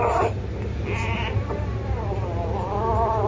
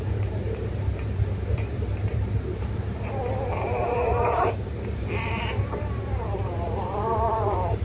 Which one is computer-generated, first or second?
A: second